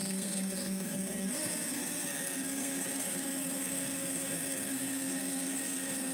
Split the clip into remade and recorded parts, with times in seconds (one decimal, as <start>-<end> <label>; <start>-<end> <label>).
0.0-6.1 remade